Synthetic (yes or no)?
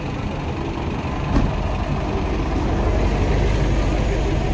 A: no